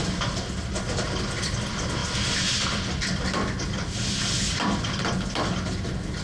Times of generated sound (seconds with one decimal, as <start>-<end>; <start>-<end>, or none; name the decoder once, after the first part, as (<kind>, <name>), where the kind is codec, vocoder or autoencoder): 0.0-2.0 (vocoder, BigVGAN v2); 4.2-6.2